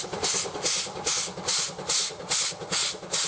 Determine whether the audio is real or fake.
real